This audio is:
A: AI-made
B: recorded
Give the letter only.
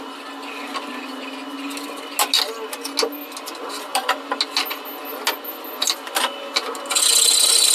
B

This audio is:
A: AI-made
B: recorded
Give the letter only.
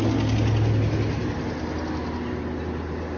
B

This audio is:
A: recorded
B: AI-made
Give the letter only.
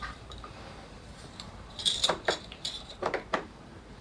B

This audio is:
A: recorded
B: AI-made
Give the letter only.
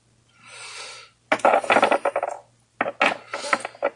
A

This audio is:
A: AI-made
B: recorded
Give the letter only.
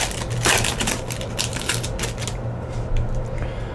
B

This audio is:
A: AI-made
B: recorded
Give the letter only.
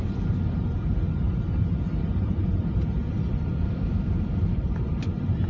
A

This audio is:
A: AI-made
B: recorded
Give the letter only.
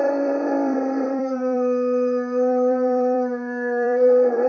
A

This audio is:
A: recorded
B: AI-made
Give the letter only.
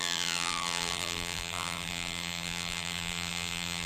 B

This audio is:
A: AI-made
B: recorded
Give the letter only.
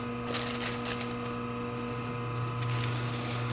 B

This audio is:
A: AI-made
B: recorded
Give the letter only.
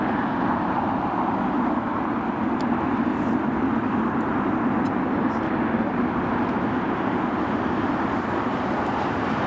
B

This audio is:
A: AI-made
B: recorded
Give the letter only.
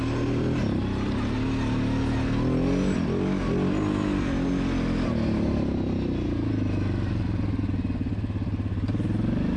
B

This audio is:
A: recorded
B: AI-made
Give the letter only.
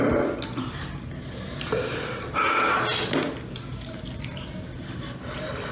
A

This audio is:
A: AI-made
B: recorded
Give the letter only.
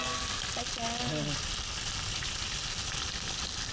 B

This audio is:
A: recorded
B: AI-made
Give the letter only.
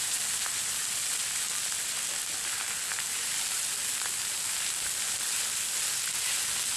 A